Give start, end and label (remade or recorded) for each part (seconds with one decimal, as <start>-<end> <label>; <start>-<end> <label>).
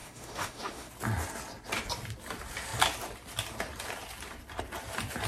0.0-0.9 remade; 0.9-5.3 recorded